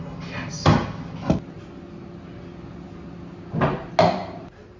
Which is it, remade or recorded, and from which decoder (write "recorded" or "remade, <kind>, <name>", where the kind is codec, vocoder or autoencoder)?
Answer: recorded